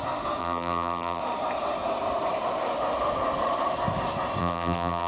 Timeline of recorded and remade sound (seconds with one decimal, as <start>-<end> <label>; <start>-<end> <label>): 0.0-0.4 recorded; 0.4-1.2 remade; 1.2-4.4 recorded; 4.4-5.1 remade